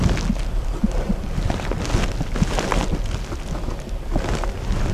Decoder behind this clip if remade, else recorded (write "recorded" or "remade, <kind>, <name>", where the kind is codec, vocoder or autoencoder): recorded